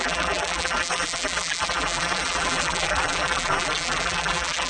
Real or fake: fake